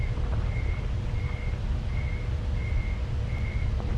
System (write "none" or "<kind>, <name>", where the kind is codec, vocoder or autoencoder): none